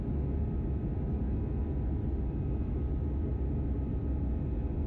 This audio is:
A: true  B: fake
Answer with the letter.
A